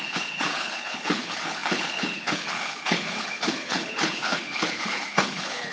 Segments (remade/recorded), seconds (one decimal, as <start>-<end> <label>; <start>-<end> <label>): 0.0-5.7 remade